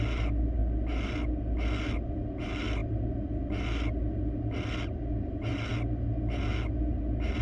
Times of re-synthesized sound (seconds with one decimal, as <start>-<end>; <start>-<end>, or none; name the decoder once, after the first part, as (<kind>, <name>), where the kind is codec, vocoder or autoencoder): none

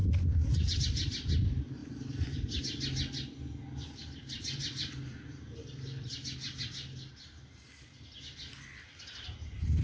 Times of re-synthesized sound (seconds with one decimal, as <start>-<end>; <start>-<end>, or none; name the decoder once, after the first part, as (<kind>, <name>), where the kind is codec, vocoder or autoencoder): 0.0-0.8 (vocoder, BigVGAN v2); 1.8-2.6; 4.0-6.6